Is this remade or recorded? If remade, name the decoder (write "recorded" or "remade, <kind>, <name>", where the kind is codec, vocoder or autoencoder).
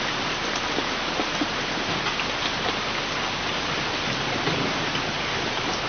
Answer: recorded